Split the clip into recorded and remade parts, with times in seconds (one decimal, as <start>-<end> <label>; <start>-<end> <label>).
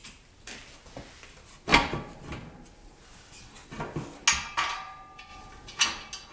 0.0-6.3 recorded